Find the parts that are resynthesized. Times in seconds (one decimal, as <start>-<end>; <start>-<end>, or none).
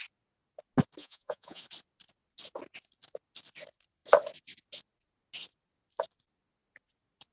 1.0-1.6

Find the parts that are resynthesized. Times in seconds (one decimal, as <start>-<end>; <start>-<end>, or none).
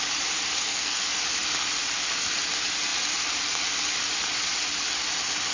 0.6-1.2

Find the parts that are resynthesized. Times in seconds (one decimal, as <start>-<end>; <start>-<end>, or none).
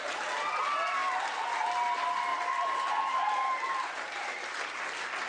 1.0-1.7; 2.3-4.8